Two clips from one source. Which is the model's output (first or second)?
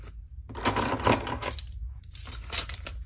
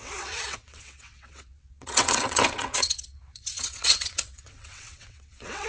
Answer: second